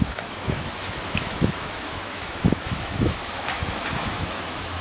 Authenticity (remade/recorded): remade